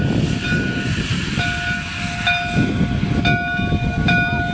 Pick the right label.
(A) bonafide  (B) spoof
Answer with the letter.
A